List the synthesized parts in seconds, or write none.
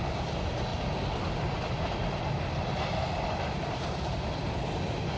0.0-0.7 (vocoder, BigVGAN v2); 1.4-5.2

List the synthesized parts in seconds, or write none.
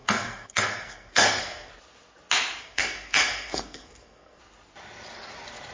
0.0-1.7 (codec, SNAC); 2.6-4.4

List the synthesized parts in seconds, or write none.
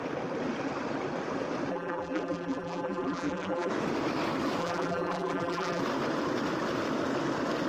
1.7-3.7 (vocoder, BigVGAN v2); 4.6-5.8